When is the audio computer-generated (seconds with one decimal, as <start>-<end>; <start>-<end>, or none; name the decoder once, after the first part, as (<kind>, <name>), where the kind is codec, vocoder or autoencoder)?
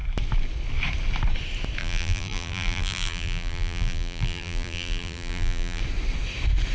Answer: 1.8-5.8 (vocoder, BigVGAN v2)